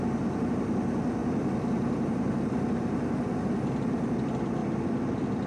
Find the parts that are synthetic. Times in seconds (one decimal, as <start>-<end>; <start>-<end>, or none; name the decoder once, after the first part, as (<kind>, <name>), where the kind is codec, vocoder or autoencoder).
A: none